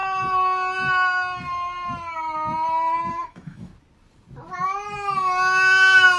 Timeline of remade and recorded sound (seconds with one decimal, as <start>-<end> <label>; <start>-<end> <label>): 0.0-3.1 recorded; 3.1-3.7 remade; 3.7-6.2 recorded